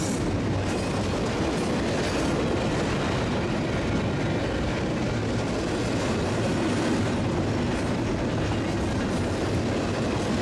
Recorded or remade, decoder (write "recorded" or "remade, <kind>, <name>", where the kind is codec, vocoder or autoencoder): recorded